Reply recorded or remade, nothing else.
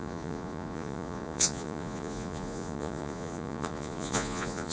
remade